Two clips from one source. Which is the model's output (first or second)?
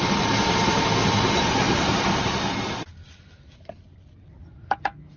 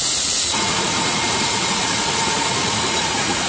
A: second